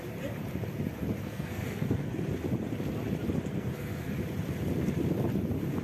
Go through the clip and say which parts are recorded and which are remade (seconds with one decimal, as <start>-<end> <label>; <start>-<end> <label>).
0.0-1.2 recorded; 1.2-2.3 remade; 2.3-3.5 recorded; 3.5-4.1 remade; 4.1-5.8 recorded